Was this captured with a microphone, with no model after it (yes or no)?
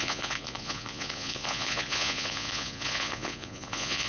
no